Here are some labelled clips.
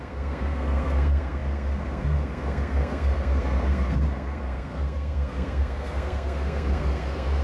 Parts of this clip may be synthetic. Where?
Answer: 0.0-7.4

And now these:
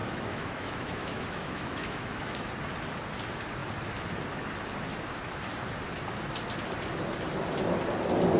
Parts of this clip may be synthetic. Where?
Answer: 0.0-2.5

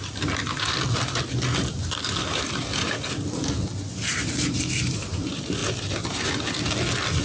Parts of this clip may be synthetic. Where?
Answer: none

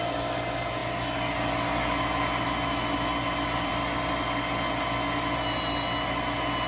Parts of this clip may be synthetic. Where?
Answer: none